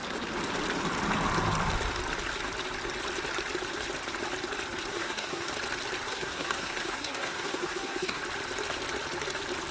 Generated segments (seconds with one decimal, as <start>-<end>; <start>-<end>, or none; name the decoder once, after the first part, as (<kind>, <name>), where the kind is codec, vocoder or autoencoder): 4.9-5.5 (codec, SNAC); 6.1-8.2